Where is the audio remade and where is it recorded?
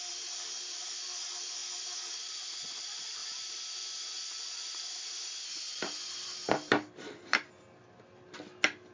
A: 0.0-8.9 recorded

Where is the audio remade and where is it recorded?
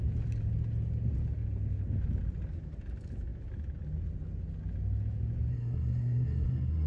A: 0.0-5.5 recorded; 5.5-6.9 remade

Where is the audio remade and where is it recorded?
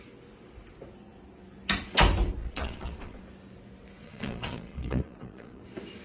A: 0.0-2.4 recorded; 2.4-3.2 remade; 3.2-4.0 recorded; 4.0-5.6 remade; 5.6-6.0 recorded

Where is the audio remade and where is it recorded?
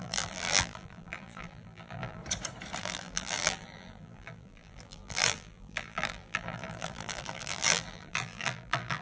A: 0.0-2.2 remade; 2.2-2.8 recorded; 2.8-9.0 remade